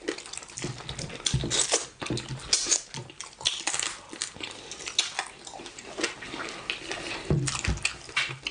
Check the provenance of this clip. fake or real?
real